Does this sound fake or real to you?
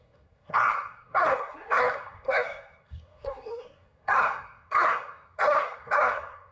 fake